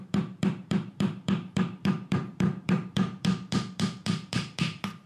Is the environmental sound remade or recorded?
remade